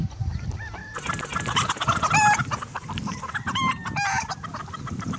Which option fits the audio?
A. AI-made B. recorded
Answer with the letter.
B